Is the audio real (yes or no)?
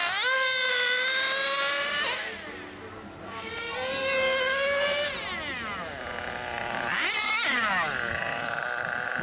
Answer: yes